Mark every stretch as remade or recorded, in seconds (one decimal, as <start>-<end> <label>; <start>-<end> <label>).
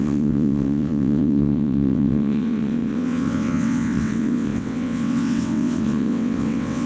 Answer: 0.0-6.9 remade